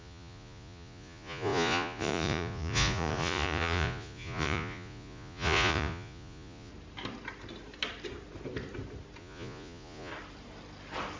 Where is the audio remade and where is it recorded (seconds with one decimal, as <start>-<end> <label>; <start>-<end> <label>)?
0.0-6.7 remade; 6.7-9.2 recorded; 9.2-10.1 remade; 10.1-11.2 recorded